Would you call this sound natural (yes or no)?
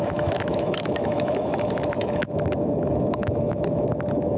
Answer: no